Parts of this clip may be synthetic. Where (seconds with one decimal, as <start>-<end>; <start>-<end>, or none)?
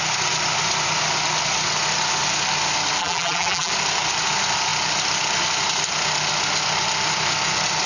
3.0-3.7